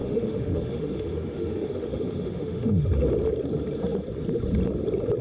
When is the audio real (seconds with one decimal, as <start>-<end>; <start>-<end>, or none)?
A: 2.9-5.2